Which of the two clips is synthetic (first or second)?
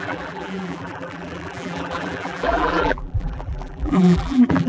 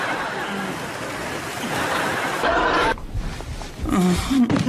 first